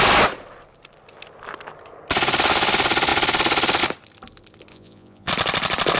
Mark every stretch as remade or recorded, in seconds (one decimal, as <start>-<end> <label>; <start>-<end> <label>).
0.0-4.7 recorded; 4.7-5.3 remade; 5.3-6.0 recorded

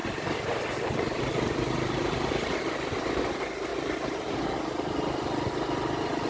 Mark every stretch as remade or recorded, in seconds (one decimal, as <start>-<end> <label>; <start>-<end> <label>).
0.0-2.9 remade; 2.9-6.3 recorded

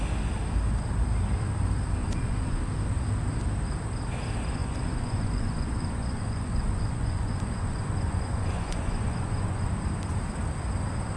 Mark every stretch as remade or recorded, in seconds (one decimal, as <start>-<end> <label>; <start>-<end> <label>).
0.0-2.0 recorded; 2.0-2.6 remade; 2.6-4.6 recorded; 4.6-9.7 remade; 9.7-11.2 recorded

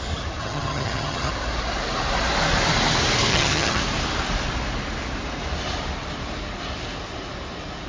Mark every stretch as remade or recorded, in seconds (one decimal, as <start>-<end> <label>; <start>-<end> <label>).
0.0-0.4 recorded; 0.4-1.3 remade; 1.3-3.3 recorded; 3.3-3.8 remade; 3.8-7.9 recorded

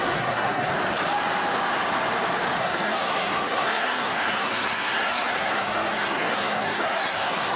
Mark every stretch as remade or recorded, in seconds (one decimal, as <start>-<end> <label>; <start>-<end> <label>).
0.0-0.7 remade; 0.7-2.6 recorded; 2.6-7.6 remade

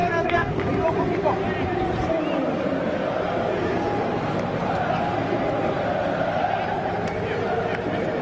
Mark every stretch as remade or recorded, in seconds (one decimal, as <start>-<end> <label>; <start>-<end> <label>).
0.0-0.6 remade; 0.6-8.2 recorded